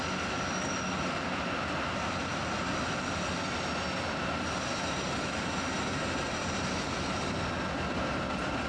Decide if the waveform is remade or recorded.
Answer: recorded